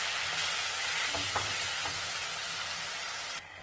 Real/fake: real